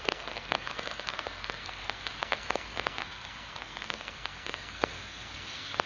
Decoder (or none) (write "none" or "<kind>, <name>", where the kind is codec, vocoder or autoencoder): codec, SNAC